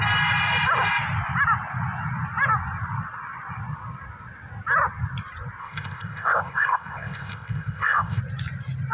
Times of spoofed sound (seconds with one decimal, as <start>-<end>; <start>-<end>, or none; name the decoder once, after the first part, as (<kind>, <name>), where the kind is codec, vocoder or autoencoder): 5.6-8.2 (codec, ZipCodec)